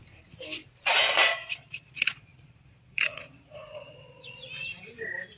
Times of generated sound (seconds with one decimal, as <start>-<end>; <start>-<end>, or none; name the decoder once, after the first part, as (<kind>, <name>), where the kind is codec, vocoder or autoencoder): 1.3-4.5 (vocoder, Vocos)